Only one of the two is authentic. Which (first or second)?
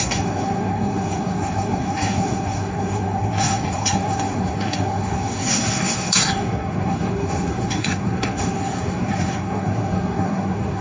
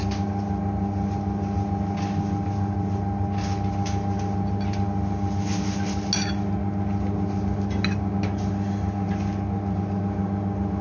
second